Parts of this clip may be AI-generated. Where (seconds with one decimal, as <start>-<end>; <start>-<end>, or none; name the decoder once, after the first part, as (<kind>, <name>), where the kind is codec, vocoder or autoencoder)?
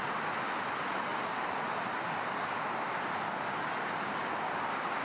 none